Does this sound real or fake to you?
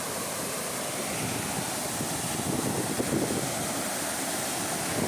real